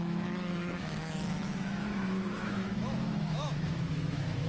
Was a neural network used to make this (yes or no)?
yes